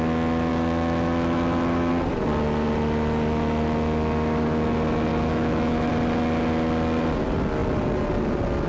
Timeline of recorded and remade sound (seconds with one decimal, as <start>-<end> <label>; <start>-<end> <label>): 0.0-0.5 recorded; 0.5-1.9 remade; 1.9-5.1 recorded; 5.1-5.9 remade; 5.9-8.7 recorded